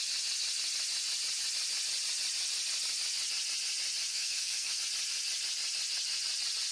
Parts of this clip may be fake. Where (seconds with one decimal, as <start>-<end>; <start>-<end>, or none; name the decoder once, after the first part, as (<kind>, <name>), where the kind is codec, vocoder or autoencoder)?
4.1-4.8 (codec, SNAC)